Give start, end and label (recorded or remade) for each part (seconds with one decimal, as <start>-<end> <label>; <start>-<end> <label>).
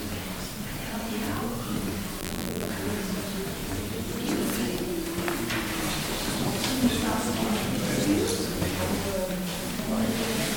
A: 0.0-2.2 recorded; 2.2-2.7 remade; 2.7-10.6 recorded